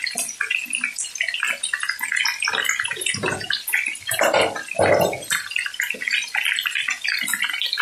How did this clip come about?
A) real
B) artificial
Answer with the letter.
A